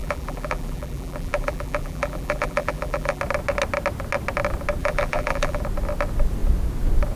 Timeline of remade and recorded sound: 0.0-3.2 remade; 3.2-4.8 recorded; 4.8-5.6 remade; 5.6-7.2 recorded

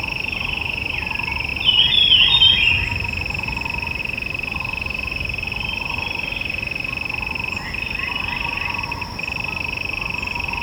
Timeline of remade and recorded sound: 0.0-10.6 recorded

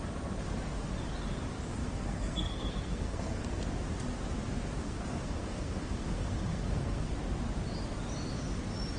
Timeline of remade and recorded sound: 0.0-1.8 recorded; 1.8-3.6 remade; 3.6-4.8 recorded; 4.8-7.1 remade; 7.1-9.0 recorded